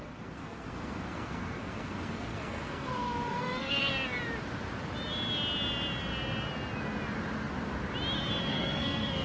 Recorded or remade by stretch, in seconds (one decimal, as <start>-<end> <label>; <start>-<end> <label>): 0.0-3.9 remade; 3.9-8.5 recorded; 8.5-9.2 remade